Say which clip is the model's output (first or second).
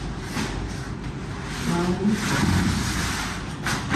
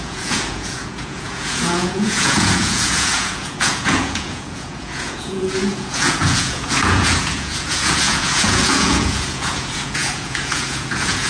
second